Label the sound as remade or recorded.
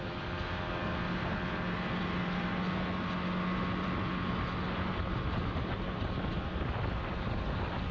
recorded